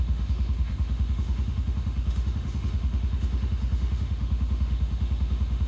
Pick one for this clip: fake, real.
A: fake